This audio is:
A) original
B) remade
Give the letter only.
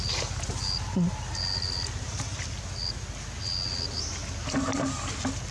A